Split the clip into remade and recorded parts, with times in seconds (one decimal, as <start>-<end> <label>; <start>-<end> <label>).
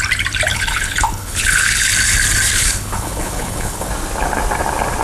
0.0-0.5 recorded; 0.5-1.7 remade; 1.7-2.6 recorded; 2.6-3.9 remade; 3.9-5.0 recorded